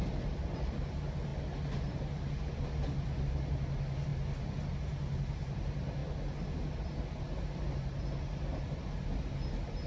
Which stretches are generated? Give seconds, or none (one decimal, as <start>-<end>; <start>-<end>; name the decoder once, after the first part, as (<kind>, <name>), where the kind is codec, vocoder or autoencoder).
none